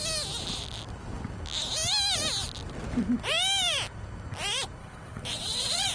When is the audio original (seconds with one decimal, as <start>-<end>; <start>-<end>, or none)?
0.0-4.8